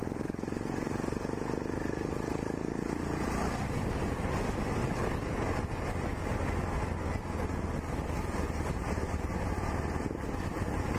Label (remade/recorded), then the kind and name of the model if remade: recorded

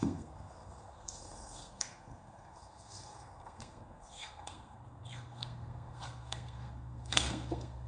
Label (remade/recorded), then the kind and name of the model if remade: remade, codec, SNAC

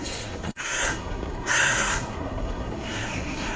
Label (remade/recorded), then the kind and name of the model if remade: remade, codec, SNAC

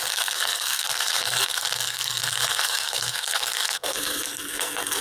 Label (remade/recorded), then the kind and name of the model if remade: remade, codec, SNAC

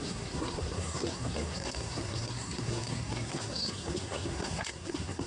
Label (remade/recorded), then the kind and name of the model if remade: remade, codec, SNAC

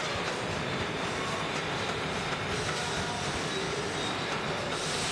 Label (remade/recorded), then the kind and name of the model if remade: recorded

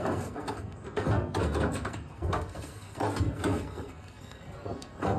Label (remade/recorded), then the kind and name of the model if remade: remade, codec, SNAC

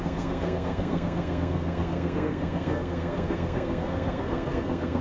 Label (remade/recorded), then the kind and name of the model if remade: remade, codec, SNAC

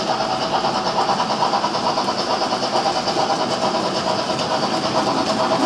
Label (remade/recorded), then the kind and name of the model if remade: recorded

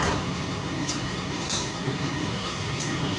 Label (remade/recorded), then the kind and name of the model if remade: remade, codec, SNAC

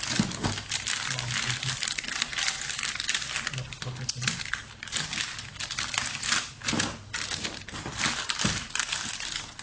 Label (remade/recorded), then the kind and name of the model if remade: recorded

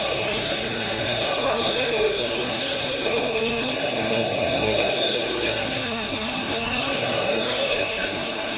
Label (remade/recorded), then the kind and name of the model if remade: remade, codec, SNAC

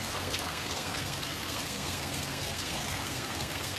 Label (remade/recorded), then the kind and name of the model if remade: remade, codec, SNAC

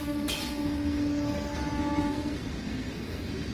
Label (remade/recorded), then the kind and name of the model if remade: remade, codec, SNAC